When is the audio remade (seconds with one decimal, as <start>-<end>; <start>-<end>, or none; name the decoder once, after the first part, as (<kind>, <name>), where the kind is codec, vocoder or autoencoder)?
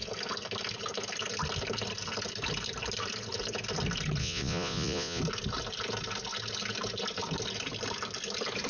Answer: 4.2-5.2 (vocoder, Vocos)